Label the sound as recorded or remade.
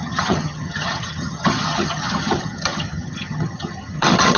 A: remade